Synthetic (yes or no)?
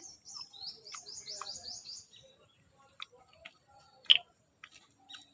no